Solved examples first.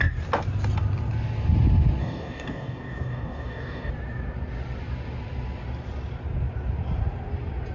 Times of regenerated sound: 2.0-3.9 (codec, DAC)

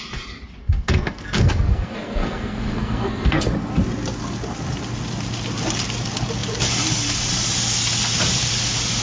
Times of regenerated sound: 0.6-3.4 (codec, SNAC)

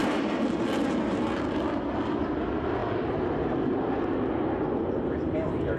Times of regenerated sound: none

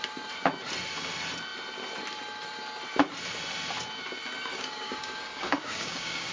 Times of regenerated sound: 4.5-6.3 (codec, DAC)

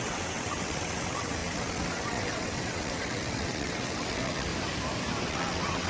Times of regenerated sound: 0.0-4.5 (vocoder, WaveNeXt); 5.2-5.9

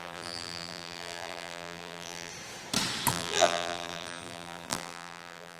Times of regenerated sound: 0.0-2.3 (vocoder, BigVGAN v2); 3.1-5.6